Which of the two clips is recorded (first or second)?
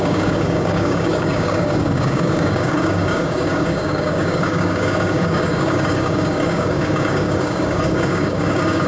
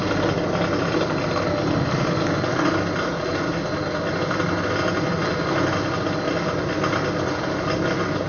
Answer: second